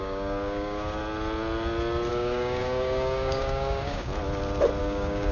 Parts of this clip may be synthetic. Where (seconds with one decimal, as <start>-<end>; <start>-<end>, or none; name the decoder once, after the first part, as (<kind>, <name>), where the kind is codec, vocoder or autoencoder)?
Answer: 0.0-1.0 (codec, DAC); 2.1-4.1; 4.8-5.3